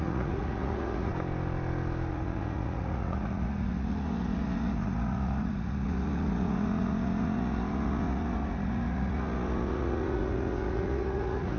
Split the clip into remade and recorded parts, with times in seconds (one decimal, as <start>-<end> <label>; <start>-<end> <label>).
0.0-1.1 remade; 1.1-2.1 recorded; 2.1-11.6 remade